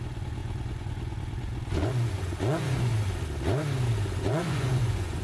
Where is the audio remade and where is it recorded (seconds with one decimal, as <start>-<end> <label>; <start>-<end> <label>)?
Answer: 0.0-2.9 remade; 2.9-4.2 recorded; 4.2-5.2 remade